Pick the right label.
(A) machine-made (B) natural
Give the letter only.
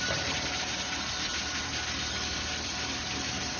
A